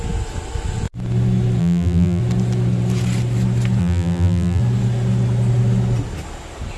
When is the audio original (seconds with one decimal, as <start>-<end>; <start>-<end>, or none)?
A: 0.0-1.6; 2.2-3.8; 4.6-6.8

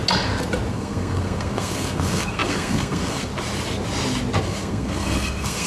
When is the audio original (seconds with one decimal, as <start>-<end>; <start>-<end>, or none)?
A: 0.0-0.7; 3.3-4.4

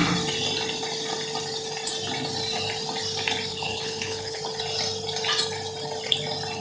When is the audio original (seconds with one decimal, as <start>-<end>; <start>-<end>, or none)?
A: 0.0-3.5; 4.4-6.6

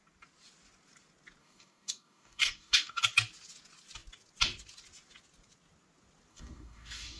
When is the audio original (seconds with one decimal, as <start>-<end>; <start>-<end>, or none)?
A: 0.0-1.4; 3.0-6.3